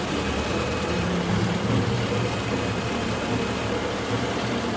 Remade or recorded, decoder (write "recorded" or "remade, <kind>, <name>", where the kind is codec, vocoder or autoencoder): remade, vocoder, BigVGAN v2